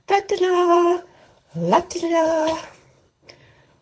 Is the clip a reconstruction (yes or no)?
yes